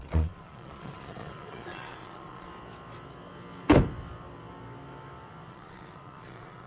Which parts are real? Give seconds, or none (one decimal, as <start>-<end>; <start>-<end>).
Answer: 2.5-5.5